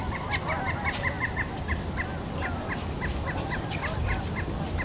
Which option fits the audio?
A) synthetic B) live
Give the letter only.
B